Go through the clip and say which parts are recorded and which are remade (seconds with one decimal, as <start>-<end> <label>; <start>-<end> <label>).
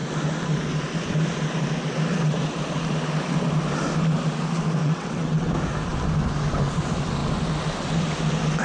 0.0-4.8 recorded; 4.8-5.5 remade; 5.5-8.6 recorded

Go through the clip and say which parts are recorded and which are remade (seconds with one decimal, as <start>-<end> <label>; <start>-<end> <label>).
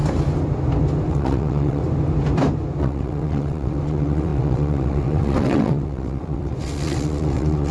0.0-1.1 recorded; 1.1-1.8 remade; 1.8-2.8 recorded; 2.8-7.7 remade